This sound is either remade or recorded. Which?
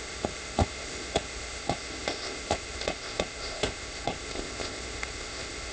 remade